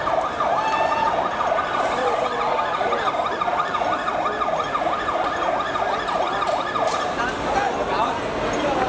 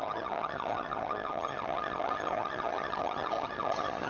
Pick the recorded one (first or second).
first